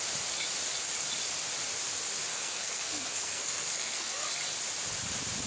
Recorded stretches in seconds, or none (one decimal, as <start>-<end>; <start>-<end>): 0.0-2.3; 4.3-5.5